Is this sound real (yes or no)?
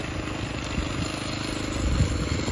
yes